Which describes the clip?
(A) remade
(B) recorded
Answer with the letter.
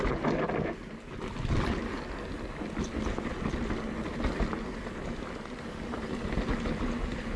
B